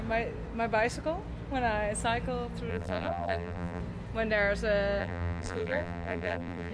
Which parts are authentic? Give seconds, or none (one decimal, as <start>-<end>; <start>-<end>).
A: 0.0-2.7; 3.8-5.0